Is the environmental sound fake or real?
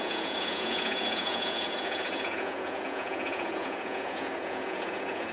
fake